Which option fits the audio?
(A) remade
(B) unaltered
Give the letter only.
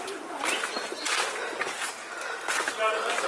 B